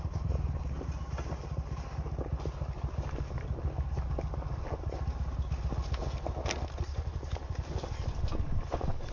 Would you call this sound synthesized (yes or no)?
no